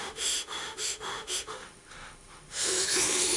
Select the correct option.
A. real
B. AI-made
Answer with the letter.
B